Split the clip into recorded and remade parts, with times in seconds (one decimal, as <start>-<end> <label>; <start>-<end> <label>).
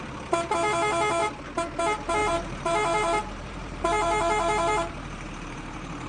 0.0-2.2 recorded; 2.2-6.1 remade